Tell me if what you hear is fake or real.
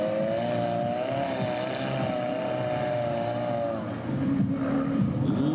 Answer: real